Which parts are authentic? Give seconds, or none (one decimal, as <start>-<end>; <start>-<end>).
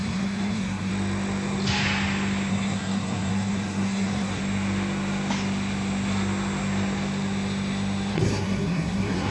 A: 0.9-2.5; 4.4-8.1